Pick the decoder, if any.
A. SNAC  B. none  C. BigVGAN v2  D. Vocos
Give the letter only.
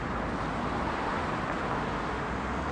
B